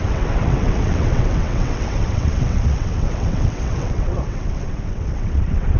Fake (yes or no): yes